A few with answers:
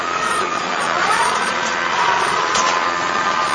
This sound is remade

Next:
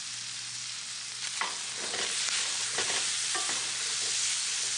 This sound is recorded